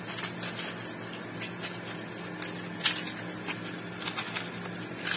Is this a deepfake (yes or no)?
no